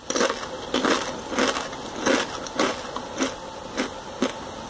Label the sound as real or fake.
real